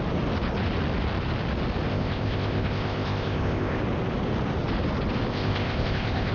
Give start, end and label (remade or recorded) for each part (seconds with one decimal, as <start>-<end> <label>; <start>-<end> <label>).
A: 0.0-1.9 recorded; 1.9-3.8 remade; 3.8-5.3 recorded; 5.3-6.3 remade